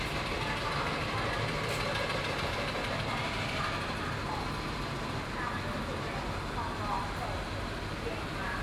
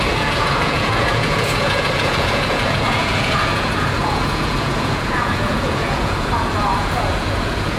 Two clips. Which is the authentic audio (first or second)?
first